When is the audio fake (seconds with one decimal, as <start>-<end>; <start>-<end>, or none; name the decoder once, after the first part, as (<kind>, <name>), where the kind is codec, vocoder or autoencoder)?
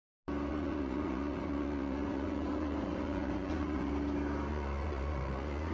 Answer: 0.5-3.9 (vocoder, Vocos); 4.5-5.7